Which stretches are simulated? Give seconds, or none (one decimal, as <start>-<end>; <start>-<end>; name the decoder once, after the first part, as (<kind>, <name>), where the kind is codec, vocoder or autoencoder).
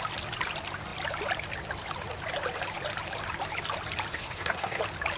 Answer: 4.1-4.8 (codec, SNAC)